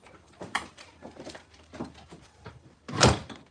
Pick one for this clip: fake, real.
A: fake